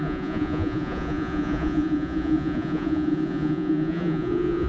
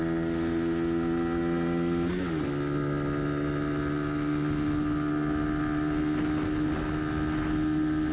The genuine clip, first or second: second